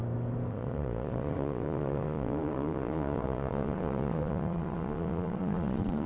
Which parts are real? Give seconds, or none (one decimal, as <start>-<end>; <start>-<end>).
0.0-0.5